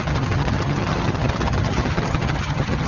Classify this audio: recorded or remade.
remade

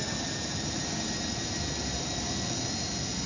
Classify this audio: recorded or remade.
recorded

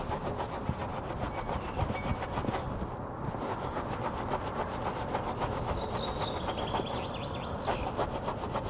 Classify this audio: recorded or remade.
recorded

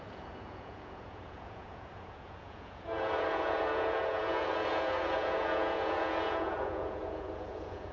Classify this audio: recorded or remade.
remade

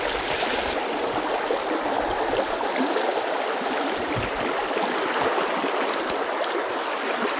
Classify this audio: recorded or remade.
recorded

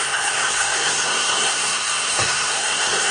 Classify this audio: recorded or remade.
remade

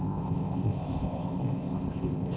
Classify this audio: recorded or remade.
remade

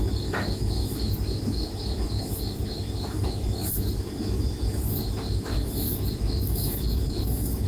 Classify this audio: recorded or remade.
remade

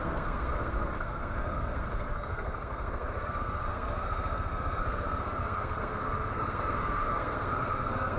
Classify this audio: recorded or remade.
remade